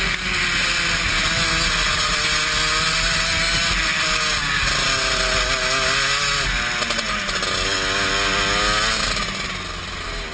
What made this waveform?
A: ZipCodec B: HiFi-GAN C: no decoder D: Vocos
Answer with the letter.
C